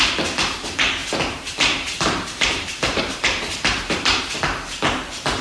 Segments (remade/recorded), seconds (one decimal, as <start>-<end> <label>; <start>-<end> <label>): 0.0-1.0 recorded; 1.0-4.2 remade; 4.2-5.4 recorded